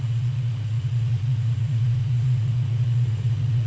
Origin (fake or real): fake